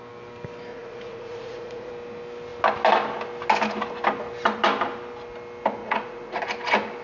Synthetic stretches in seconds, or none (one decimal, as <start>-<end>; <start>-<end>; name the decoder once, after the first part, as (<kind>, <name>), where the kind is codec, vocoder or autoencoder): 0.7-1.9 (vocoder, Vocos); 5.8-6.4